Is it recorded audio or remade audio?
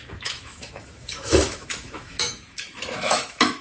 remade